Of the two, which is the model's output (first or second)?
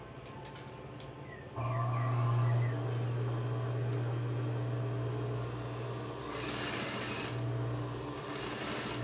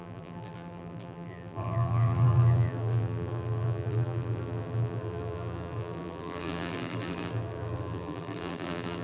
second